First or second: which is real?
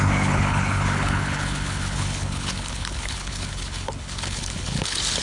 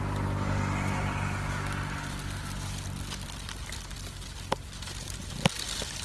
second